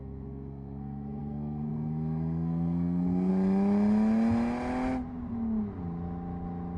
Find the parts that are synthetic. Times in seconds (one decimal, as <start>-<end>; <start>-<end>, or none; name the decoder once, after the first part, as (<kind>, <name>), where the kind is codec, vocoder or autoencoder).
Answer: 0.0-3.3 (codec, SNAC)